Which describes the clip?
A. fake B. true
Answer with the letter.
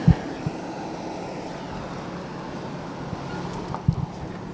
B